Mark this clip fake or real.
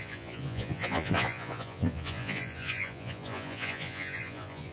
fake